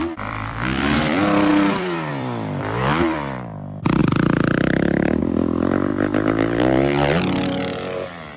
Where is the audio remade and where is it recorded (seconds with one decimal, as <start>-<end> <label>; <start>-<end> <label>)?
0.0-4.0 remade; 4.0-5.2 recorded; 5.2-5.9 remade; 5.9-7.6 recorded; 7.6-8.4 remade